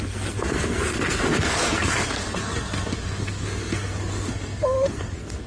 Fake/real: fake